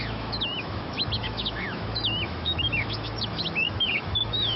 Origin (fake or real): fake